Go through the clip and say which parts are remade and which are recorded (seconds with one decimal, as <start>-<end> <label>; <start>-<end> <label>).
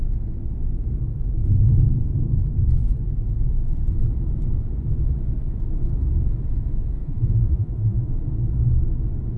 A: 0.0-7.0 recorded; 7.0-8.1 remade; 8.1-9.4 recorded